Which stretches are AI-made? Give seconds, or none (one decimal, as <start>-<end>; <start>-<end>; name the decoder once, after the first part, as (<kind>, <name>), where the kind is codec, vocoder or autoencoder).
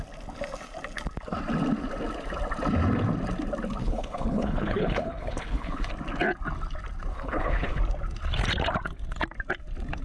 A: 3.8-5.9 (codec, HILCodec); 7.1-7.8